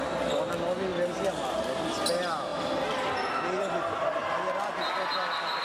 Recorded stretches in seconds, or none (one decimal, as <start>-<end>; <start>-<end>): 0.0-5.6